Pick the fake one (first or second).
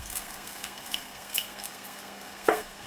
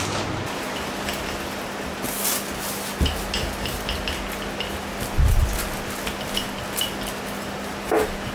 first